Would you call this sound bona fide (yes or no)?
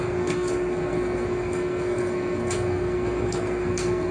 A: no